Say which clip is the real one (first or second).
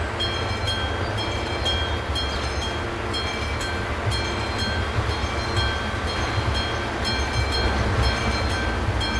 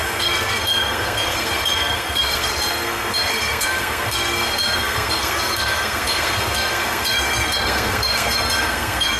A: first